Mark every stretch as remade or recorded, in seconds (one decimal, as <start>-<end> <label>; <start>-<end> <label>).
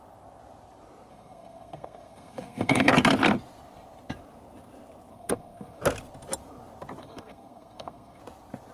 0.0-1.1 recorded; 1.1-2.9 remade; 2.9-5.1 recorded; 5.1-5.8 remade; 5.8-7.0 recorded; 7.0-8.2 remade; 8.2-8.7 recorded